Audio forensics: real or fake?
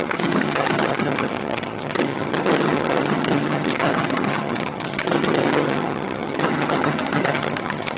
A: fake